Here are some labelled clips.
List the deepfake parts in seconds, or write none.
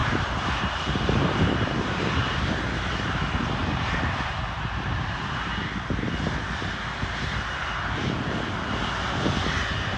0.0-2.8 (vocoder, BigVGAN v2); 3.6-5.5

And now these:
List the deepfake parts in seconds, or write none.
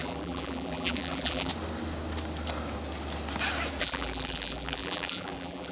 0.0-1.5 (vocoder, BigVGAN v2); 3.8-5.7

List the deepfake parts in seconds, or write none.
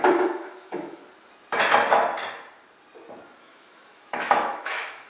0.0-1.0 (autoencoder, DAC-VAE); 3.4-5.1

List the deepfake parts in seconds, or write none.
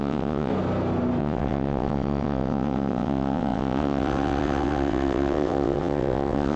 0.0-0.5 (vocoder, WaveNeXt); 1.2-6.6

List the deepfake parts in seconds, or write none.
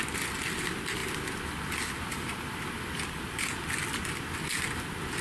none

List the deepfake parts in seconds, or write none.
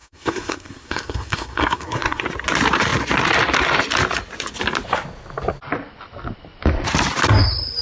0.0-2.2 (codec, SNAC)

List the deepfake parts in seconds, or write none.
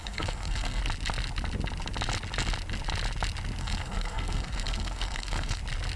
0.0-0.8 (codec, SNAC); 3.6-5.6